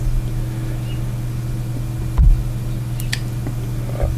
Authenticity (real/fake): real